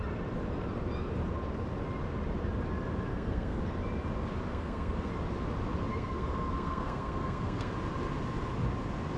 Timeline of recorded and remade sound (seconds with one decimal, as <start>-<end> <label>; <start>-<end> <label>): 0.0-3.1 recorded; 3.1-3.6 remade; 3.6-4.5 recorded; 4.5-5.1 remade; 5.1-5.9 recorded; 5.9-7.7 remade; 7.7-9.2 recorded